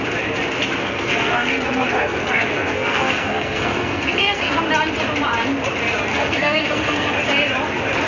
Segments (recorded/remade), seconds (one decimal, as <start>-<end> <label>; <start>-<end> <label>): 0.0-0.8 recorded; 0.8-4.6 remade; 4.6-6.1 recorded; 6.1-7.2 remade; 7.2-8.1 recorded